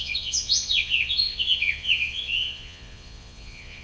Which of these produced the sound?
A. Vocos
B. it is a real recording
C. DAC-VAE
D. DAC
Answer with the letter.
A